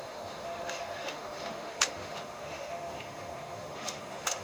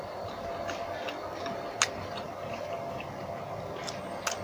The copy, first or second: first